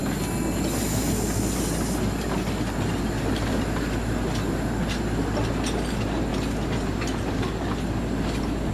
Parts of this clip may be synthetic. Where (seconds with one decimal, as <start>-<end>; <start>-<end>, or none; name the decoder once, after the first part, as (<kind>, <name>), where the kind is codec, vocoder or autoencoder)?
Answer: none

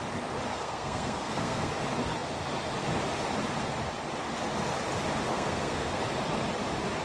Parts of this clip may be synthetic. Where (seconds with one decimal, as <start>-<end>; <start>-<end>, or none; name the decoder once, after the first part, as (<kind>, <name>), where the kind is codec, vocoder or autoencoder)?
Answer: 0.5-1.7 (codec, SNAC); 5.3-6.0

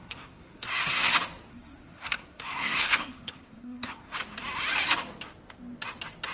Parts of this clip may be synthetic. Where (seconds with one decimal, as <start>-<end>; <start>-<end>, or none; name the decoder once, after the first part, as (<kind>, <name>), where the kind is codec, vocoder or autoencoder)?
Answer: 0.0-1.1 (codec, SNAC); 1.5-4.1

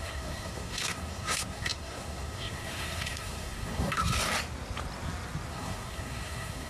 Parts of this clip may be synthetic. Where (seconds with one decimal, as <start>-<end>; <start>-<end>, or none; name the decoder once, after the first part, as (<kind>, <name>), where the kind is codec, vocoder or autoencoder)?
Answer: 0.0-4.1 (codec, SNAC); 5.5-6.7

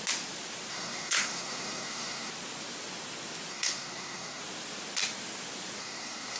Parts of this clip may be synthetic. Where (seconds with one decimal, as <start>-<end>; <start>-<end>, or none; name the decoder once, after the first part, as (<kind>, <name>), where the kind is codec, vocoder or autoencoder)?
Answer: 0.7-2.3 (codec, SNAC); 3.5-4.4; 5.8-6.4